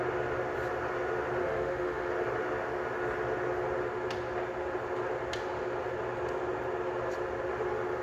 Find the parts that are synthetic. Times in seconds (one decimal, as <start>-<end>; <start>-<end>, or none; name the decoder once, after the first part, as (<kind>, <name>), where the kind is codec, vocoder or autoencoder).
1.4-2.1 (autoencoder, DAC-VAE)